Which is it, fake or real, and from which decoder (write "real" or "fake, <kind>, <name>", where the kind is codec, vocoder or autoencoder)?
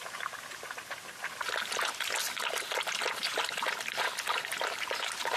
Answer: real